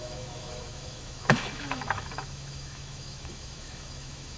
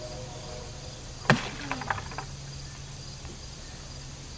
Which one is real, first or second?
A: second